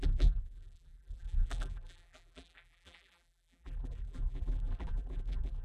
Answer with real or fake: fake